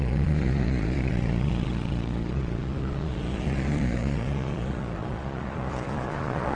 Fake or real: fake